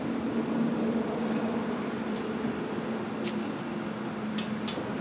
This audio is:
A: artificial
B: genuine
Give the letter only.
B